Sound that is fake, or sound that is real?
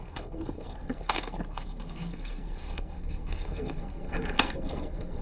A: fake